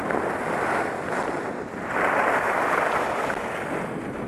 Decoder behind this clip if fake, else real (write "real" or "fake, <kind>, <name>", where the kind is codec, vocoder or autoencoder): real